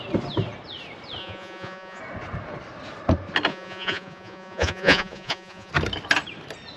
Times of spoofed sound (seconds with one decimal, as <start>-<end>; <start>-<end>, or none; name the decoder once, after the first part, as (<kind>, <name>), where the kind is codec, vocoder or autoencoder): 1.2-2.0 (vocoder, Vocos); 3.5-5.7